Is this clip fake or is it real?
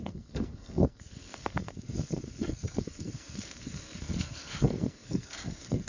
fake